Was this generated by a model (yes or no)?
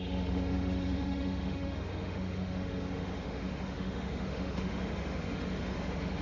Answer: yes